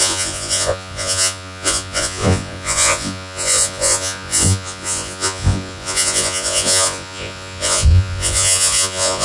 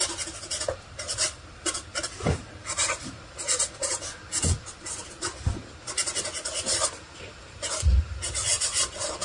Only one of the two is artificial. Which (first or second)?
first